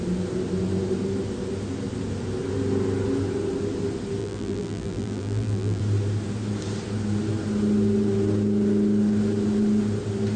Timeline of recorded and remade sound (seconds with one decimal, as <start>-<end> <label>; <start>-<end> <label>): 0.0-4.2 recorded; 4.2-5.8 remade; 5.8-10.4 recorded